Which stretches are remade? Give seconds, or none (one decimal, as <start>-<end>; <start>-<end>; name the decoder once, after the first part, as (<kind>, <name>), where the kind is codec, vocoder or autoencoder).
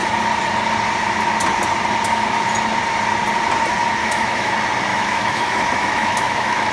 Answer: 4.0-4.5 (autoencoder, DAC-VAE); 4.9-6.7